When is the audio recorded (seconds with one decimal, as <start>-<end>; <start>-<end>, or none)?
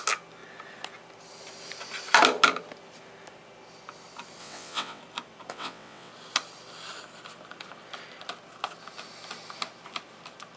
0.0-4.4; 5.0-5.5; 6.1-10.6